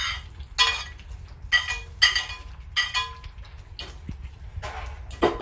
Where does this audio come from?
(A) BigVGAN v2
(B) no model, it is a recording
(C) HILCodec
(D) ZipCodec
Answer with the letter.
B